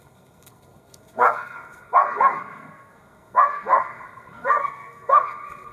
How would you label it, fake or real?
fake